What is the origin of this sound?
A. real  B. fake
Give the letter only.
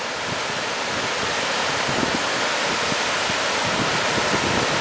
A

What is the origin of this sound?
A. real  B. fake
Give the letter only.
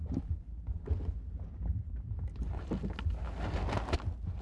A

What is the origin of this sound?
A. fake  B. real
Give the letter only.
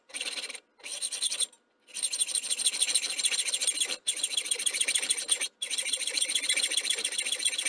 B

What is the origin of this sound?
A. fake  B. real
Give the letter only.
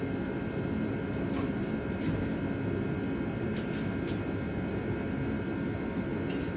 B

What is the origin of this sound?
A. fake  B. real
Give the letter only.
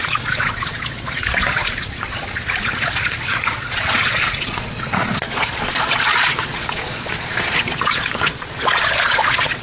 A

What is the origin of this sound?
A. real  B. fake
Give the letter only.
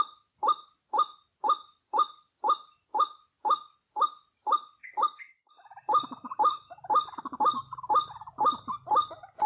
A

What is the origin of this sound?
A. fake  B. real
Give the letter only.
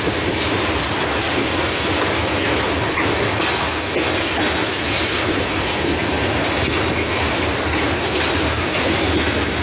B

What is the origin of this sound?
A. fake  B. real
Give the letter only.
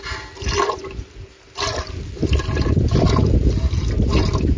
B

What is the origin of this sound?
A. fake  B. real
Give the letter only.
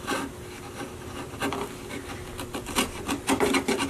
A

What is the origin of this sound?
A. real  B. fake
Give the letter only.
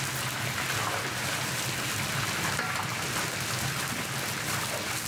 A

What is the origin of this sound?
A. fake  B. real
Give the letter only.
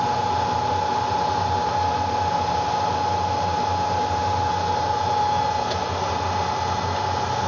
B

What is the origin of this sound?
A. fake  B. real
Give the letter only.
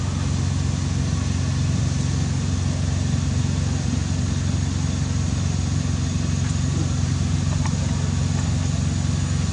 B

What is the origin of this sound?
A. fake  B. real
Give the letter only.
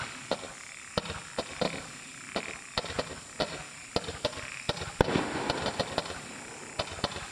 B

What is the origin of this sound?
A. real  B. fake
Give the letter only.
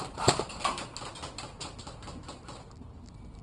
A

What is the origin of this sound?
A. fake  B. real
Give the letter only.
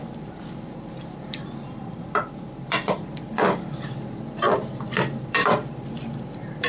A